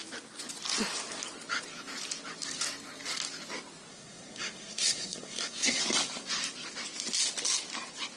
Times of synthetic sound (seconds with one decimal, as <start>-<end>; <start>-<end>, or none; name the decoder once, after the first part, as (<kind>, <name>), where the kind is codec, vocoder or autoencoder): 3.9-5.8 (codec, SNAC)